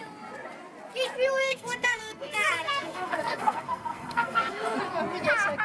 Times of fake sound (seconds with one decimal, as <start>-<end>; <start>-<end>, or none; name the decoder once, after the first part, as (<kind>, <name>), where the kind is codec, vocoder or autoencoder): 1.4-4.8 (codec, SNAC)